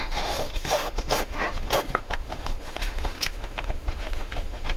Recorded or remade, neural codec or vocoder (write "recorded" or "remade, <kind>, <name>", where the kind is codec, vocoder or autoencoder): remade, autoencoder, DAC-VAE